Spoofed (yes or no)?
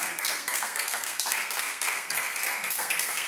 yes